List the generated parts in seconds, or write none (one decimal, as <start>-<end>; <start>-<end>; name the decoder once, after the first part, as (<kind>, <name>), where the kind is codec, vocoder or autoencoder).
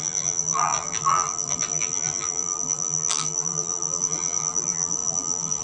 0.0-5.6 (vocoder, BigVGAN v2)